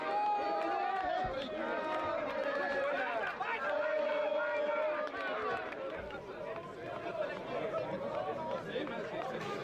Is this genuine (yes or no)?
yes